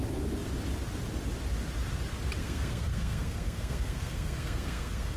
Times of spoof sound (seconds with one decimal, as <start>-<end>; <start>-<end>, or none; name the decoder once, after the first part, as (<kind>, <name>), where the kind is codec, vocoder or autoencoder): 2.4-5.2 (codec, SNAC)

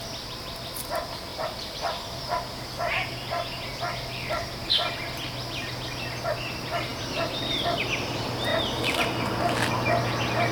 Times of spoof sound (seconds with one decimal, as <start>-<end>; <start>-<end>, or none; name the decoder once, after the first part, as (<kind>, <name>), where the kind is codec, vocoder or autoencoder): none

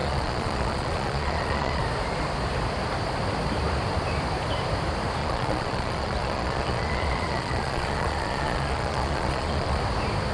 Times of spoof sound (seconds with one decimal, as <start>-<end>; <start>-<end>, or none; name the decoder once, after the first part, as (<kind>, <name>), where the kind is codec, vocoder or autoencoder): 0.0-1.8 (vocoder, Vocos); 5.2-9.8

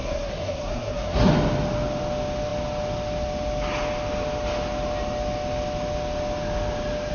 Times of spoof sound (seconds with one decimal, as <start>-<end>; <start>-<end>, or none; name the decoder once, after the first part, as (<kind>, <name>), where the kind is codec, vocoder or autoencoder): 0.0-1.3 (codec, SNAC)

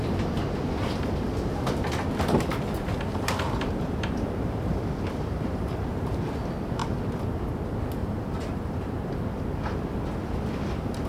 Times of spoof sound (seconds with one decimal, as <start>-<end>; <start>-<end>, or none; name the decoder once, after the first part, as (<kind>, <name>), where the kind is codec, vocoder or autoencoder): 3.1-6.2 (vocoder, BigVGAN v2); 8.0-8.9